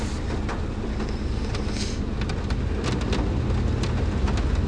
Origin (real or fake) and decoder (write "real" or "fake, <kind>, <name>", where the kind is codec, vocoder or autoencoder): real